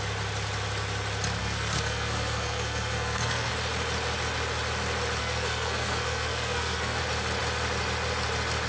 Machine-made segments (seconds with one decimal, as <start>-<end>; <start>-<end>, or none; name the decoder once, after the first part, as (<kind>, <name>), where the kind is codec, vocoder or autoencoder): 1.4-3.5 (codec, SNAC); 5.2-7.0